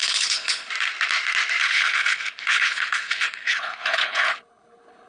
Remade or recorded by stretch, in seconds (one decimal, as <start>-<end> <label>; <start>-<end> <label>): 0.0-0.7 remade; 0.7-1.6 recorded; 1.6-5.1 remade